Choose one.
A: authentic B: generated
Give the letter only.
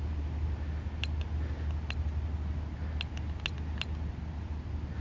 A